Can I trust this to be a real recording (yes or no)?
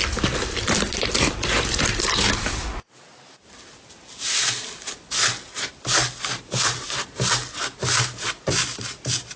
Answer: yes